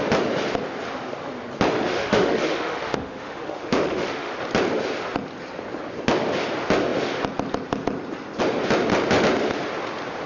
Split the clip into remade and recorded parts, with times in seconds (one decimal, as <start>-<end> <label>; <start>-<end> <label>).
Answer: 0.0-1.9 recorded; 1.9-4.3 remade; 4.3-10.3 recorded